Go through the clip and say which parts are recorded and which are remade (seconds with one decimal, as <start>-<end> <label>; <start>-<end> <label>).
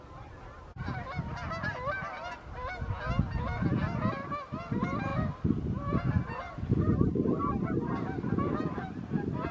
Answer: 0.0-9.5 recorded